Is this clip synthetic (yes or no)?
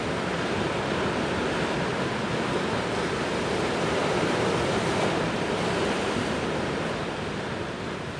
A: yes